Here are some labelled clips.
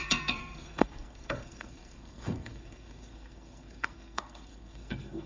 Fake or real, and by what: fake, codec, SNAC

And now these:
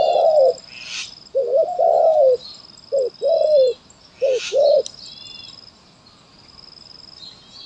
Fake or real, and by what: real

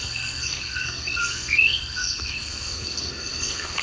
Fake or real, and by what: fake, codec, SNAC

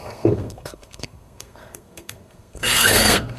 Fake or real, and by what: fake, codec, SNAC